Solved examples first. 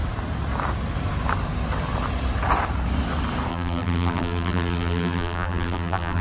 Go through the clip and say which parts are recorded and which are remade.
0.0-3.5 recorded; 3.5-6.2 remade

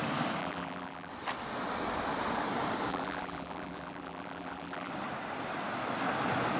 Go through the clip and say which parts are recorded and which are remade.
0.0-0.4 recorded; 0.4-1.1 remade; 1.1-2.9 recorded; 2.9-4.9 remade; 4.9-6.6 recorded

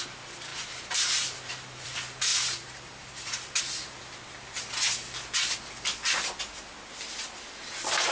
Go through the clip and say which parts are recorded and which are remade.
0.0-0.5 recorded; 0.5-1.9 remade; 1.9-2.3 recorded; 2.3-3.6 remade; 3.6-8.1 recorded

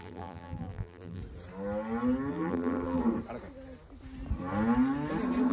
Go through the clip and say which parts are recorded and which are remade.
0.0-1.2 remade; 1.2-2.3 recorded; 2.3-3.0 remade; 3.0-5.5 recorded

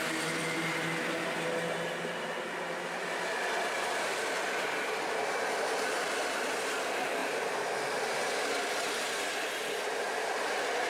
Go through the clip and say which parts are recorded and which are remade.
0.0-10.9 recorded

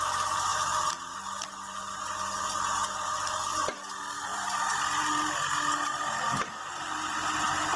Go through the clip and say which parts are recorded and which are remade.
0.0-4.3 recorded; 4.3-5.3 remade; 5.3-7.8 recorded

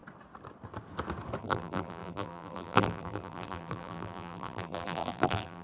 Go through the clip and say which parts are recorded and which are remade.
0.0-1.4 recorded; 1.4-5.6 remade

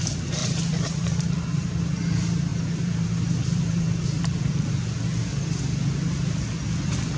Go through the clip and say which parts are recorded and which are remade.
0.0-0.4 recorded; 0.4-1.3 remade; 1.3-2.5 recorded; 2.5-4.7 remade; 4.7-7.2 recorded